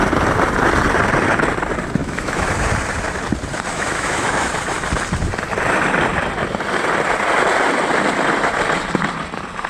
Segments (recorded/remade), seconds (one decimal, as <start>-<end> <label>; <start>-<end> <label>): 0.0-2.0 recorded; 2.0-2.5 remade; 2.5-3.7 recorded; 3.7-4.5 remade; 4.5-9.7 recorded